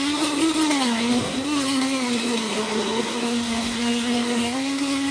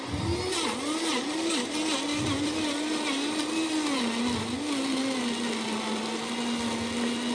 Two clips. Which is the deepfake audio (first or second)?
first